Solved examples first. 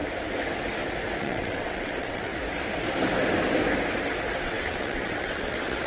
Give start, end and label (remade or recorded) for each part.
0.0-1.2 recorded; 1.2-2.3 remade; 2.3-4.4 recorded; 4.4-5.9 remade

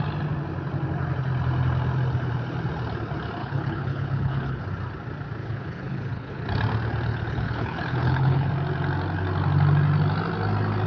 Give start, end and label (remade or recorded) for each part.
0.0-3.4 recorded; 3.4-4.6 remade; 4.6-5.4 recorded; 5.4-6.4 remade; 6.4-7.1 recorded; 7.1-8.5 remade; 8.5-10.9 recorded